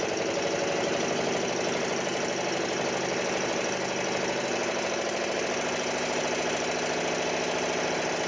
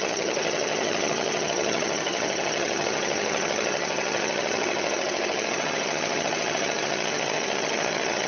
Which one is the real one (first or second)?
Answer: first